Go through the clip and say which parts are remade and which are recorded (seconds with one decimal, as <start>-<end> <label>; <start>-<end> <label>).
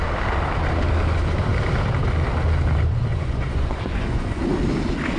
0.0-3.1 recorded; 3.1-4.4 remade; 4.4-5.2 recorded